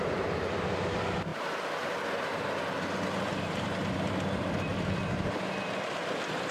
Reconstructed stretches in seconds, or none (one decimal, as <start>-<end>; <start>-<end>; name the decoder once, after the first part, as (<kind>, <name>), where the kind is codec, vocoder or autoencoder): 0.0-1.3 (vocoder, BigVGAN v2); 3.4-4.7; 6.0-6.5